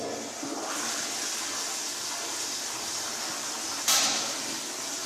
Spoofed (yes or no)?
no